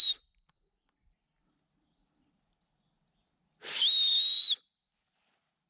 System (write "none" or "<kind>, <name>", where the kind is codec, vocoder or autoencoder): none